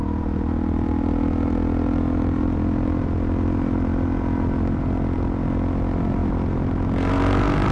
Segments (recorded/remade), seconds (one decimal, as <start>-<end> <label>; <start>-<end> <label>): 0.0-7.7 recorded